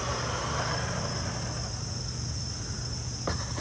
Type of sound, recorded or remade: recorded